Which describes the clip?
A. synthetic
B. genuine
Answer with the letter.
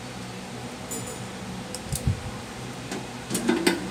B